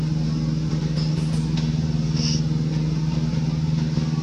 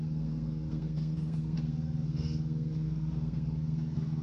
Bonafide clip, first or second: first